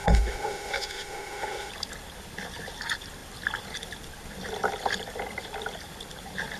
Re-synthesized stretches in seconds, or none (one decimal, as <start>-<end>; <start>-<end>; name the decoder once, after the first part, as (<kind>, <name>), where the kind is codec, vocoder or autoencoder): 0.0-1.7 (autoencoder, DAC-VAE)